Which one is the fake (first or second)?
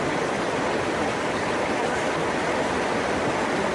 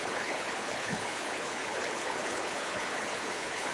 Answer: second